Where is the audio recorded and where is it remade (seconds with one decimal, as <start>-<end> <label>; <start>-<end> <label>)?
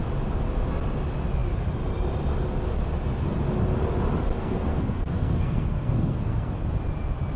0.0-4.4 recorded; 4.4-6.5 remade; 6.5-7.4 recorded